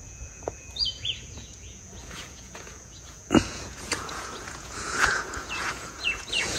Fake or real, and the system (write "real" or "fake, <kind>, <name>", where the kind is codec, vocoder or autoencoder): fake, vocoder, Vocos